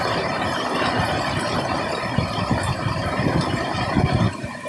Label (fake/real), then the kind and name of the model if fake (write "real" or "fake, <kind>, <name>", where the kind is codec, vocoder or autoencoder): fake, vocoder, BigVGAN v2